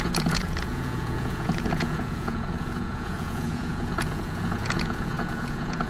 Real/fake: fake